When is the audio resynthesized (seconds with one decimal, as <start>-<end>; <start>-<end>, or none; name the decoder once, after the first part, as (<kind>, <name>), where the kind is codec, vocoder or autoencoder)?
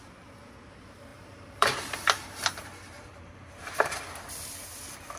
1.1-4.2 (vocoder, BigVGAN v2)